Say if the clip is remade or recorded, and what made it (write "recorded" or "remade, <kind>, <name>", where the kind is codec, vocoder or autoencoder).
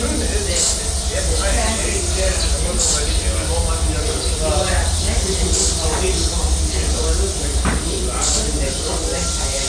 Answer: recorded